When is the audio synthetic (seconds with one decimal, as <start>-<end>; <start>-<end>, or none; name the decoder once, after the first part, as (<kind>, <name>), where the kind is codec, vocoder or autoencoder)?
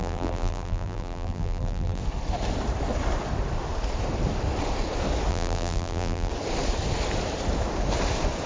0.0-2.0 (vocoder, BigVGAN v2); 5.3-6.3